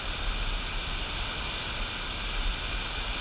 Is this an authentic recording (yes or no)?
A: yes